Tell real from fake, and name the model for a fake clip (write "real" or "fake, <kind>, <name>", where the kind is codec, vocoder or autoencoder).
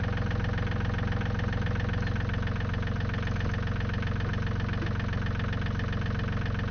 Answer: real